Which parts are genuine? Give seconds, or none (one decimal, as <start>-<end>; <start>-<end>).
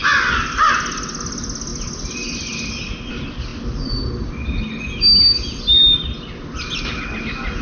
0.0-7.6